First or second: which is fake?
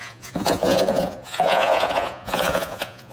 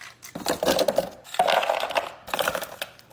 first